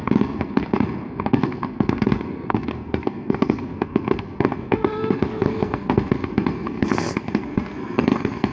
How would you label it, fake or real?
fake